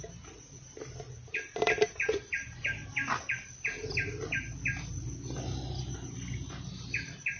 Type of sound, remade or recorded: recorded